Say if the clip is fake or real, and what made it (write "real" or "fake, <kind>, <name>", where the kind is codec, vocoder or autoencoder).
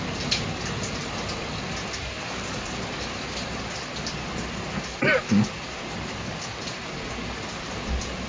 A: real